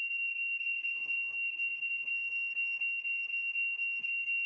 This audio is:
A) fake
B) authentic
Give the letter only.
A